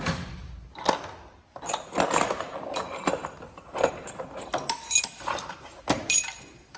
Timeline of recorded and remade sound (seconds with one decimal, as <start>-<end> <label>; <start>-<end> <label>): 0.0-6.8 recorded